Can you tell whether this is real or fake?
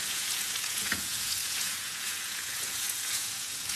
fake